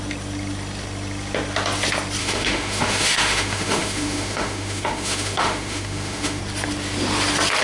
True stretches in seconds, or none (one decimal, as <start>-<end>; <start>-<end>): 0.0-2.2; 6.4-7.6